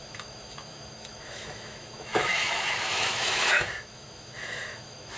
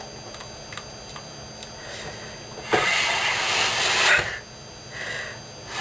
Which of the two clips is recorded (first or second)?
second